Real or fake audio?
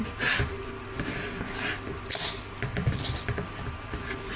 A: real